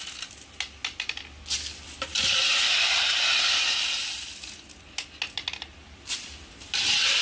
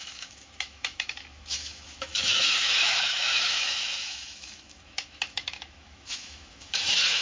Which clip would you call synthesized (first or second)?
second